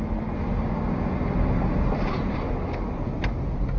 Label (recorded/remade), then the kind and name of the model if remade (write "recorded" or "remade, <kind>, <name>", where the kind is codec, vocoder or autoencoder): recorded